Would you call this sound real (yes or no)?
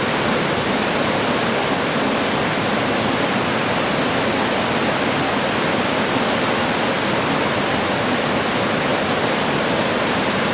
yes